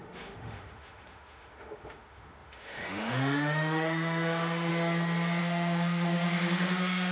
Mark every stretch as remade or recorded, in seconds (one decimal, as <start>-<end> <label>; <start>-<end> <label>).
0.0-4.7 remade; 4.7-5.4 recorded; 5.4-7.1 remade